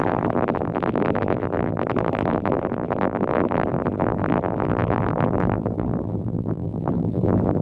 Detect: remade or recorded remade